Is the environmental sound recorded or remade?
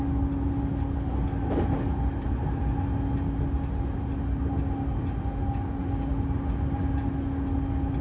recorded